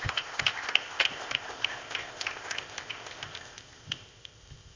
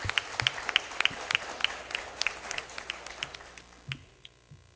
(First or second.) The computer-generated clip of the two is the first